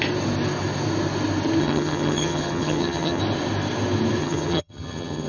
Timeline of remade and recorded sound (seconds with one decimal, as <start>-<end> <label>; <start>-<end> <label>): 0.0-1.6 recorded; 1.6-3.2 remade; 3.2-4.2 recorded; 4.2-5.3 remade